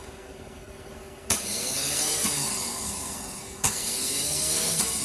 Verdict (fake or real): fake